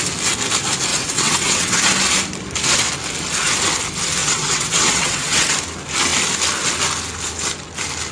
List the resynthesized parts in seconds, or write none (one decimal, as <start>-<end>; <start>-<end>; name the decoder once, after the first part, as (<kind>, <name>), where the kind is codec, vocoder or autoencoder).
0.9-1.8 (vocoder, WaveNeXt); 4.2-5.5